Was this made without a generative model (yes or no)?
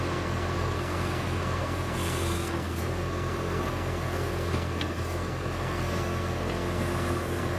no